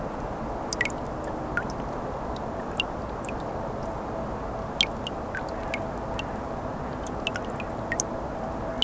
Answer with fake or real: real